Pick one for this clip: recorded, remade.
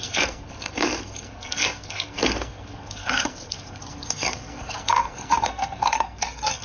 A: remade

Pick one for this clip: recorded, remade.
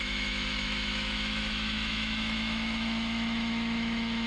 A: remade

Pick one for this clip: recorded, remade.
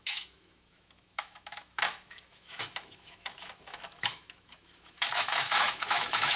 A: remade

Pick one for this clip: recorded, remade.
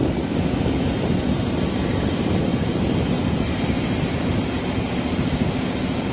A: recorded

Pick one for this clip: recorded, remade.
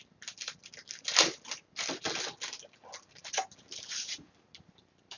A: recorded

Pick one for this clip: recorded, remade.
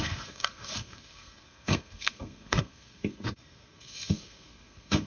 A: remade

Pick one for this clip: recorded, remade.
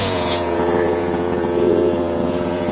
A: remade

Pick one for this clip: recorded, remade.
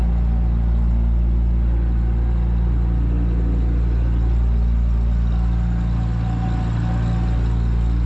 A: recorded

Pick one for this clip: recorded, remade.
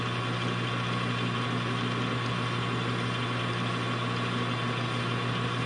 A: recorded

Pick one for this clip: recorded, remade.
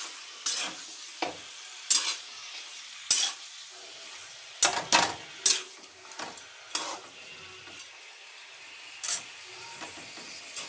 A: recorded